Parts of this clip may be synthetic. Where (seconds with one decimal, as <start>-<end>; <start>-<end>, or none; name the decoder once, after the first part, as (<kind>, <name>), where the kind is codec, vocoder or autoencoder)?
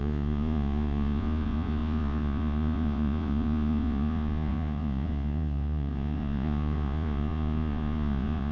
0.0-8.5 (vocoder, Vocos)